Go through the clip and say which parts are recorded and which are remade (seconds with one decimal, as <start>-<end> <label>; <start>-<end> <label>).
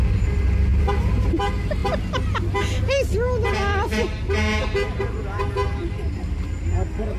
0.0-7.2 recorded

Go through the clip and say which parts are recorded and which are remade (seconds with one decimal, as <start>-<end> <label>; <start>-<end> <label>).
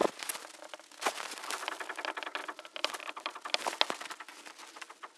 0.0-5.2 recorded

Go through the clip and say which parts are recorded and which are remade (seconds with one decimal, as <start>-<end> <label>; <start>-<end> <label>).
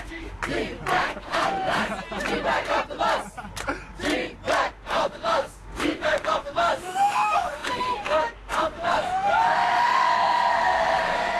0.0-0.4 remade; 0.4-0.9 recorded; 0.9-1.9 remade; 1.9-4.7 recorded; 4.7-11.4 remade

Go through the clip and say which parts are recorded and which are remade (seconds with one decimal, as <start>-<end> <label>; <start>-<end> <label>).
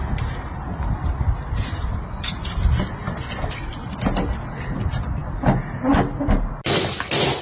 0.0-7.4 recorded